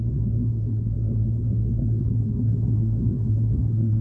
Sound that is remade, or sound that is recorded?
remade